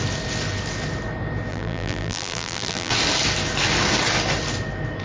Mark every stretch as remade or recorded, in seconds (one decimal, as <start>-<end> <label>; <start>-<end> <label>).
0.0-1.5 recorded; 1.5-2.9 remade; 2.9-5.0 recorded

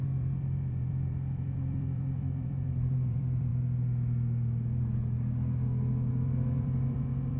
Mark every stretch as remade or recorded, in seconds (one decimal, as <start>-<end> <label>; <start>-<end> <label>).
0.0-3.5 remade; 3.5-6.1 recorded; 6.1-7.4 remade

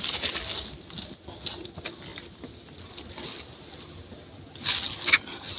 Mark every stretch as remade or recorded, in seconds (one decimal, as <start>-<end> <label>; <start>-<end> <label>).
0.0-5.6 recorded

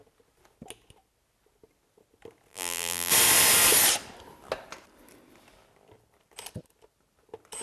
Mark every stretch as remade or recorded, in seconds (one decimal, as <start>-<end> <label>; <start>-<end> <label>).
0.0-2.5 recorded; 2.5-3.1 remade; 3.1-7.6 recorded

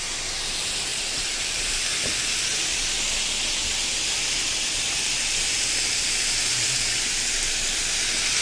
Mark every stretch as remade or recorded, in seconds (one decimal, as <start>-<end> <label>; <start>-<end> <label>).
0.0-0.9 recorded; 0.9-1.7 remade; 1.7-8.4 recorded